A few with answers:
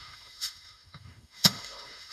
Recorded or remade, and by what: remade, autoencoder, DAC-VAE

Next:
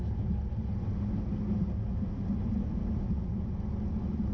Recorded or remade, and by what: recorded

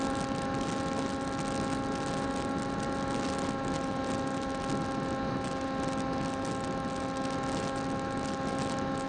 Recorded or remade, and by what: recorded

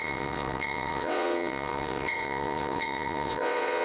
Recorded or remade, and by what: remade, vocoder, WaveNeXt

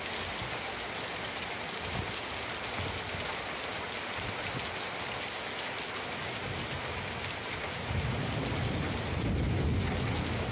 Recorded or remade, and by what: recorded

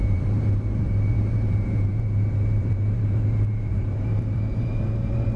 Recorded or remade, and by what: remade, vocoder, BigVGAN v2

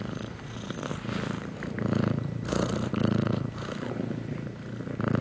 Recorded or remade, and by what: recorded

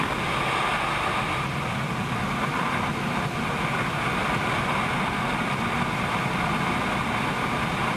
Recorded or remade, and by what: recorded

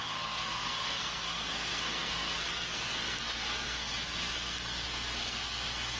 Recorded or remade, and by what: remade, codec, SNAC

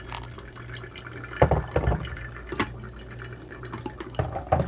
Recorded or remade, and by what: recorded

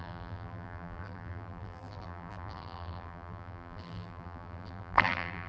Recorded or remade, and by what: remade, vocoder, BigVGAN v2